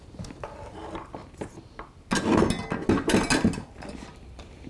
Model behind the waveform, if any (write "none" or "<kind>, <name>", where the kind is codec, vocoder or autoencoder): none